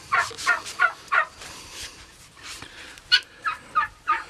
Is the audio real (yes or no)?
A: no